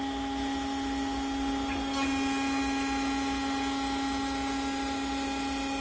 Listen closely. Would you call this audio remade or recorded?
recorded